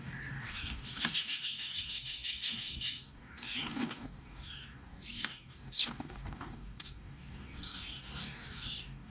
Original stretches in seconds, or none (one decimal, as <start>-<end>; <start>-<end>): none